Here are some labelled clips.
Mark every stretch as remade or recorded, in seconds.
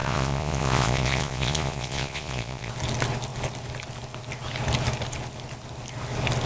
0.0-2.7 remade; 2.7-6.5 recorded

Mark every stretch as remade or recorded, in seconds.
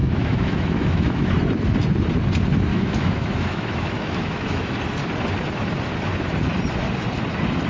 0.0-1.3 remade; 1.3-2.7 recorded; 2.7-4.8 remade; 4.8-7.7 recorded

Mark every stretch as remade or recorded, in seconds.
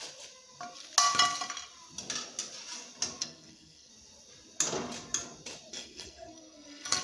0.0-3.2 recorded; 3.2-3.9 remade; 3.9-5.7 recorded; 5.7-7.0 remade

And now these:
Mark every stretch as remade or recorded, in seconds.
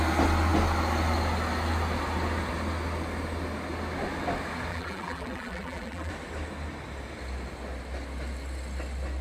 0.0-4.7 recorded; 4.7-6.1 remade; 6.1-9.2 recorded